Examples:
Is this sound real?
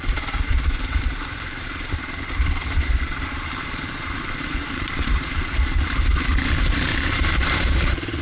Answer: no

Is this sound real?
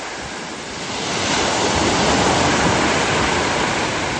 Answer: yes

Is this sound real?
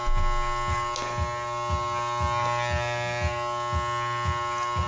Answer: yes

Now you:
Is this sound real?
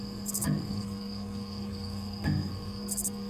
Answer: no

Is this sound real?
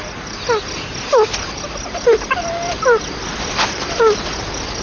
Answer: no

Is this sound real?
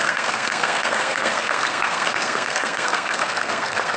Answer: no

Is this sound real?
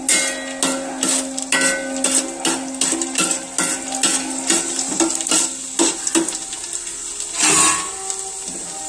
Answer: yes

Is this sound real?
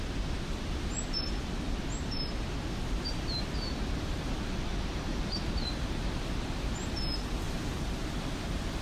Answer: yes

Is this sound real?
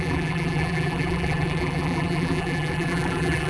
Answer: no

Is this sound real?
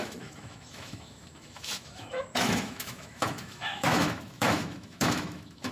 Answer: no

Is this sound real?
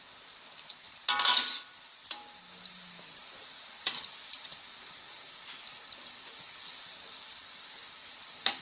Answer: yes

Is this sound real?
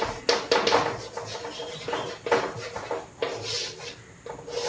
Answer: yes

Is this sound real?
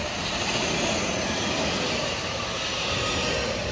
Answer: yes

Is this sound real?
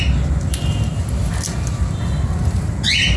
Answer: yes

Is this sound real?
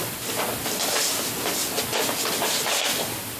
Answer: no